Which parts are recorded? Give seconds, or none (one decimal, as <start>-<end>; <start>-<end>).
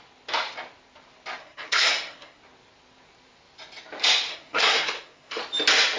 0.0-1.4; 2.4-4.3; 5.4-6.0